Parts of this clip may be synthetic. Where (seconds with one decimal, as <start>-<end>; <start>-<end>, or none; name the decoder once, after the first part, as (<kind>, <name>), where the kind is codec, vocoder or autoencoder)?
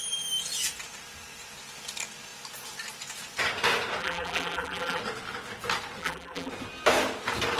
4.0-5.0 (vocoder, BigVGAN v2); 6.0-6.5